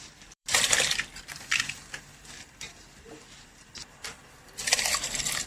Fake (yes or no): yes